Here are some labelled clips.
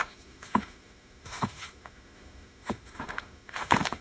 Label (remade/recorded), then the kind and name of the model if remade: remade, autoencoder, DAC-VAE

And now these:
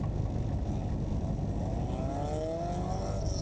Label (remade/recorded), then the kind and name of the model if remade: recorded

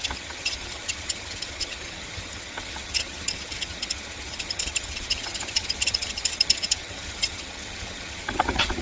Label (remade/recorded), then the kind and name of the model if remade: remade, vocoder, HiFi-GAN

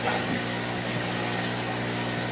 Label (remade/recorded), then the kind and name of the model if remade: recorded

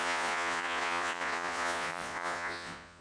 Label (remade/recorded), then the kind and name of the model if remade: remade, vocoder, Vocos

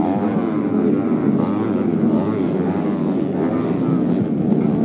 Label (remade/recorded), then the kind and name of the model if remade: recorded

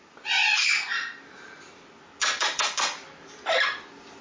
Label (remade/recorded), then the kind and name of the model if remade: recorded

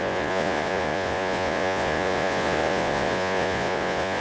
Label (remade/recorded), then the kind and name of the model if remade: remade, vocoder, Vocos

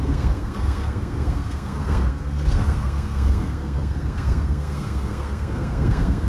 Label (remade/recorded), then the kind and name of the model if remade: remade, codec, SNAC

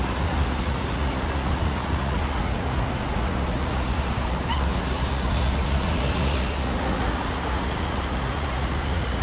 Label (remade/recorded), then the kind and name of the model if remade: remade, vocoder, Vocos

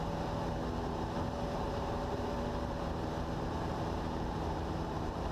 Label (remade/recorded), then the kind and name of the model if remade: remade, vocoder, BigVGAN v2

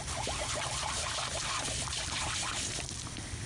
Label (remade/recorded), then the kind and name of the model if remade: remade, vocoder, BigVGAN v2